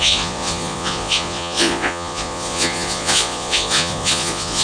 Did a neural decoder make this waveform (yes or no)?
yes